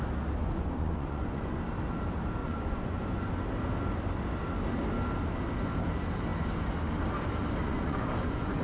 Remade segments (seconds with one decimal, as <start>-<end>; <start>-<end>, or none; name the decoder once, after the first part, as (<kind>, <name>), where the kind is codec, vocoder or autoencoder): 0.4-1.6 (vocoder, Vocos); 2.4-3.3; 7.6-8.6